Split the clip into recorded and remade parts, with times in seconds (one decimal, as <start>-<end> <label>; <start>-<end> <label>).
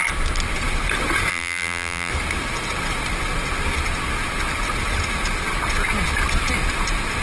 0.0-1.3 recorded; 1.3-2.1 remade; 2.1-7.2 recorded